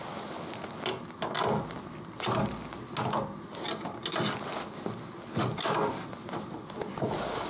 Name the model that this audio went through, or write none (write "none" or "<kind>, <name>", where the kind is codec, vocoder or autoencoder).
none